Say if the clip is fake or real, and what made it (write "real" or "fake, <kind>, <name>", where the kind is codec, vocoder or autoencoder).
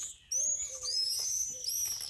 real